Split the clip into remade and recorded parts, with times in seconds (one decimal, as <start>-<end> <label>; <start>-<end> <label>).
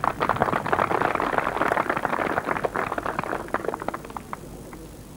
0.0-5.2 recorded